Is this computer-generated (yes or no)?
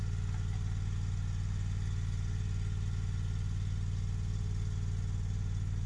no